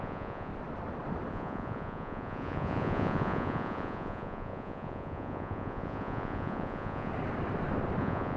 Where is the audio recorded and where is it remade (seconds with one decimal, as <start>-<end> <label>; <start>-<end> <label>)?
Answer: 0.0-0.5 remade; 0.5-1.3 recorded; 1.3-7.1 remade; 7.1-8.0 recorded; 8.0-8.4 remade

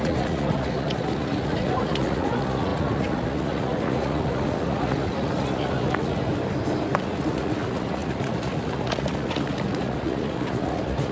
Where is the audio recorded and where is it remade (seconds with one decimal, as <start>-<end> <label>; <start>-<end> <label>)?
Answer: 0.0-6.3 remade; 6.3-7.0 recorded; 7.0-11.1 remade

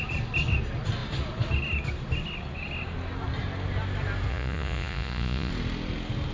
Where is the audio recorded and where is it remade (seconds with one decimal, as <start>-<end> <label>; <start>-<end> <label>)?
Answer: 0.0-4.3 recorded; 4.3-5.5 remade; 5.5-6.3 recorded

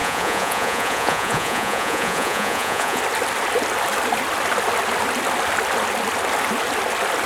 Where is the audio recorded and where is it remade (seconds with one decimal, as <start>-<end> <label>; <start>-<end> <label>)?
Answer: 0.0-3.0 remade; 3.0-7.3 recorded

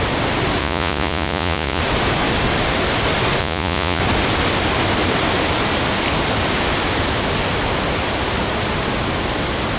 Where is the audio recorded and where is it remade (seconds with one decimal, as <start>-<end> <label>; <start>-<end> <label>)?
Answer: 0.0-0.6 recorded; 0.6-1.8 remade; 1.8-3.4 recorded; 3.4-4.0 remade; 4.0-9.8 recorded